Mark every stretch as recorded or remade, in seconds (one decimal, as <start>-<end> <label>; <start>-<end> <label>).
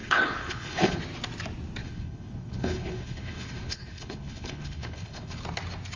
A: 0.0-1.0 remade; 1.0-1.8 recorded; 1.8-5.4 remade; 5.4-6.0 recorded